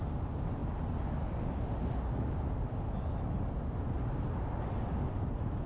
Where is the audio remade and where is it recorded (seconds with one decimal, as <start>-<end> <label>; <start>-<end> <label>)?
0.0-5.7 recorded